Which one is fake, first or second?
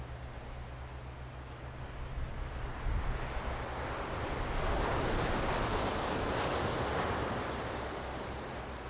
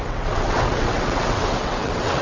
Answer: second